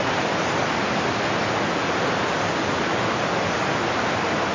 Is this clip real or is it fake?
real